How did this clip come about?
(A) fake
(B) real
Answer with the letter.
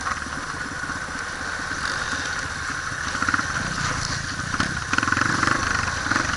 B